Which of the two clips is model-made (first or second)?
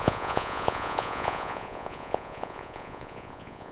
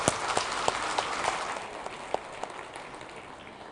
first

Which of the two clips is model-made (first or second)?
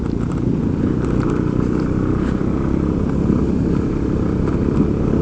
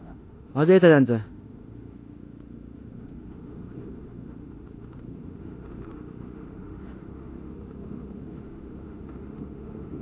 second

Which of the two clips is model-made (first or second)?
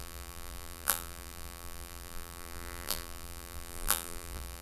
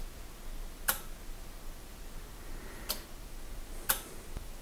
first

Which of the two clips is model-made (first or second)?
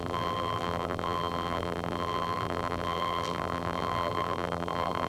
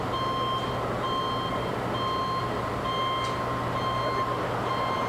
first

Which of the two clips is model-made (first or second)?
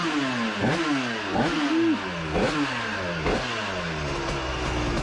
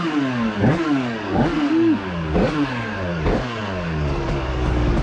second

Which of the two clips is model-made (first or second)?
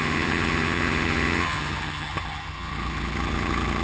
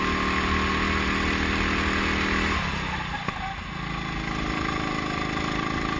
first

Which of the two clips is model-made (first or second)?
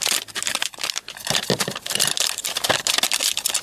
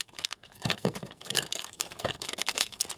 second